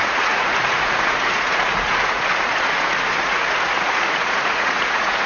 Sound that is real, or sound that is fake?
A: fake